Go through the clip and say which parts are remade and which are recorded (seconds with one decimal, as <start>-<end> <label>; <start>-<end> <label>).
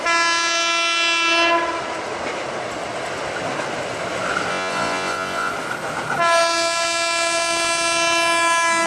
0.0-4.5 recorded; 4.5-5.5 remade; 5.5-8.9 recorded